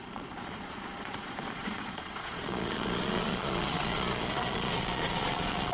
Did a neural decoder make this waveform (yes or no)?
yes